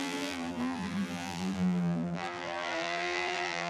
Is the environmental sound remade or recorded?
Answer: remade